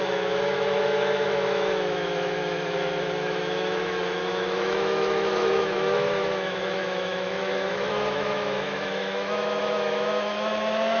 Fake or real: fake